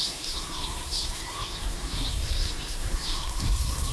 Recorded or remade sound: remade